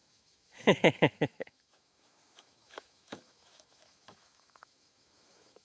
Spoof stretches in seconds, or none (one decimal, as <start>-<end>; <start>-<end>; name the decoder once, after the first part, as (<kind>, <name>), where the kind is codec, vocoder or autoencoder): 0.0-5.6 (autoencoder, DAC-VAE)